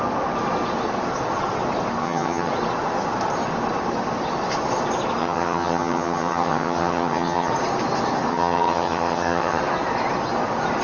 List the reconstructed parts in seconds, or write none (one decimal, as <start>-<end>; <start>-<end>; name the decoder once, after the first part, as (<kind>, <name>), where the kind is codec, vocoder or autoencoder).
2.0-2.5 (vocoder, HiFi-GAN); 5.2-7.5; 8.3-9.6